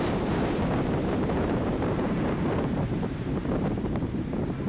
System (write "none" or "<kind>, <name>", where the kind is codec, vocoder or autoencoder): vocoder, BigVGAN v2